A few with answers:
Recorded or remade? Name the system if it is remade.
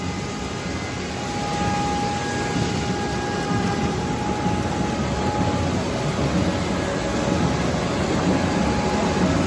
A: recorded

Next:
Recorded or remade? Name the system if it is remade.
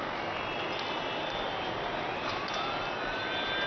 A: recorded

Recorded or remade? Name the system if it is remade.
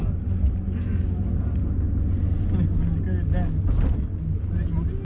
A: recorded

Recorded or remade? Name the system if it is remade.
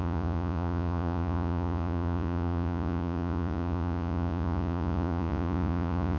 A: remade, vocoder, Vocos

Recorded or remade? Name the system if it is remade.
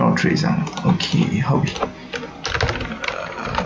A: recorded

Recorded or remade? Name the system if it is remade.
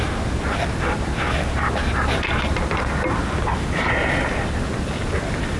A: recorded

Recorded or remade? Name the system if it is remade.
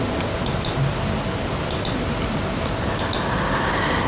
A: recorded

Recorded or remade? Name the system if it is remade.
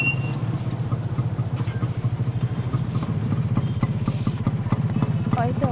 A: recorded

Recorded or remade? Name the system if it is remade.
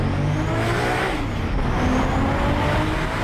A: recorded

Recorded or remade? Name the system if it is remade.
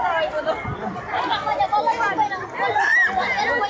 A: recorded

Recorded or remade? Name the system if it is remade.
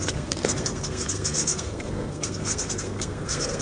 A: remade, codec, SNAC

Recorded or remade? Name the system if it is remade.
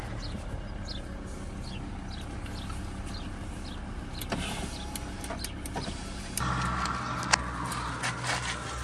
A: recorded